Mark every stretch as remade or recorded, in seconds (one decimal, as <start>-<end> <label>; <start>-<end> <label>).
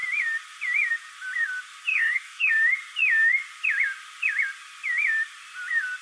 0.0-1.9 recorded; 1.9-2.5 remade; 2.5-6.0 recorded